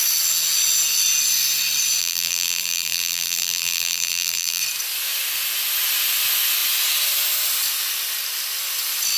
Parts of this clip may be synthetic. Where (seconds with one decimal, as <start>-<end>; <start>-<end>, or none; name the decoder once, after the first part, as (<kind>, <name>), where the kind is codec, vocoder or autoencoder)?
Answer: 2.0-4.6 (vocoder, BigVGAN v2)